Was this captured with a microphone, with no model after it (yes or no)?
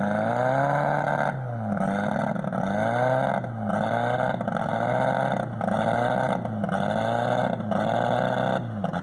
yes